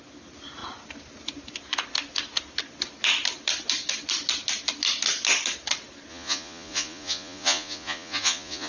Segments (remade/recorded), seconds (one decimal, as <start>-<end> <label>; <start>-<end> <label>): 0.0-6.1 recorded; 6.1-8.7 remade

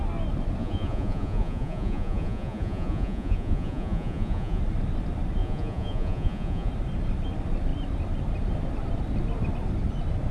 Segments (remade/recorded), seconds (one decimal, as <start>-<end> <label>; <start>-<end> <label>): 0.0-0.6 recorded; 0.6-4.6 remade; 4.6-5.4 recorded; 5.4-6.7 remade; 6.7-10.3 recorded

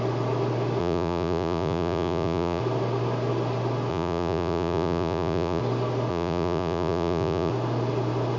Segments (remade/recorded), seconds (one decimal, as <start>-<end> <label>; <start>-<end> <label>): 0.0-0.8 recorded; 0.8-2.6 remade; 2.6-3.9 recorded; 3.9-5.6 remade; 5.6-6.1 recorded; 6.1-7.5 remade; 7.5-8.4 recorded